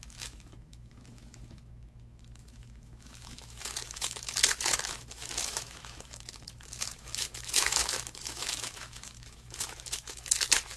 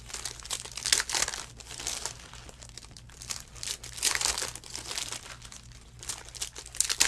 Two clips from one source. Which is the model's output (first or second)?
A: first